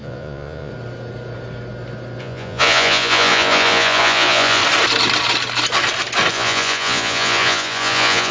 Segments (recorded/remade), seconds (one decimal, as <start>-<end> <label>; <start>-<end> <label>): 0.0-0.7 remade; 0.7-2.2 recorded; 2.2-4.6 remade; 4.6-6.3 recorded; 6.3-8.3 remade